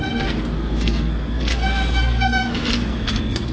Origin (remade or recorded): remade